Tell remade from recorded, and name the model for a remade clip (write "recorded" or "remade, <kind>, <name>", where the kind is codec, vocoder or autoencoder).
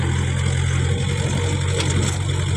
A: recorded